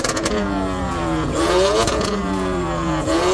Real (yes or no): no